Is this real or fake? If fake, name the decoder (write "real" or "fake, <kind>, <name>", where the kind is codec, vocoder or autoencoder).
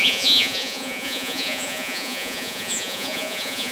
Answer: fake, vocoder, Vocos